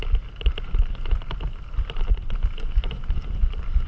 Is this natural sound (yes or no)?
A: yes